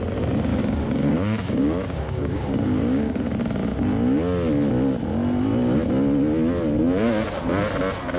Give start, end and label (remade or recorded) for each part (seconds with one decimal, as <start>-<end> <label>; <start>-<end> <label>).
0.0-0.5 recorded; 0.5-3.4 remade; 3.4-8.2 recorded